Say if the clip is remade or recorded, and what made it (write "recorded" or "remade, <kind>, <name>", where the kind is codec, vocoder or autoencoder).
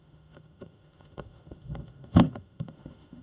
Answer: remade, autoencoder, DAC-VAE